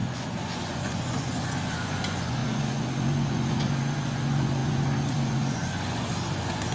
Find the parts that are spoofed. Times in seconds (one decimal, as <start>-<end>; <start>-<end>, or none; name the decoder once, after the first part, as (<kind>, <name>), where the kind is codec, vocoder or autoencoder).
0.0-6.7 (vocoder, Vocos)